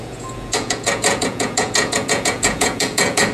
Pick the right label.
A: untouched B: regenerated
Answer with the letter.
B